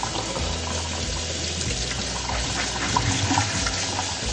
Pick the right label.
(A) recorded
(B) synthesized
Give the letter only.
A